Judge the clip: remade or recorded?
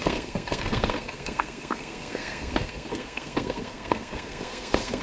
remade